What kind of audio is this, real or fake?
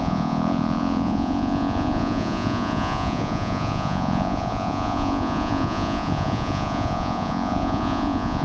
fake